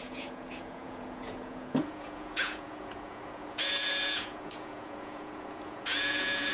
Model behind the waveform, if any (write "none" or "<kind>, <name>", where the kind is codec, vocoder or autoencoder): vocoder, Vocos